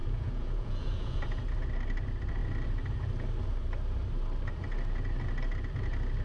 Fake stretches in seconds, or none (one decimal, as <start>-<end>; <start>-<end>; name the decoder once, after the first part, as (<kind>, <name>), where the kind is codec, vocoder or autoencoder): 0.0-1.2 (vocoder, Vocos)